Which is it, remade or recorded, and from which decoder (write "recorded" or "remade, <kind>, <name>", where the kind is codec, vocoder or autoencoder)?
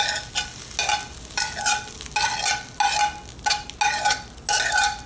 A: recorded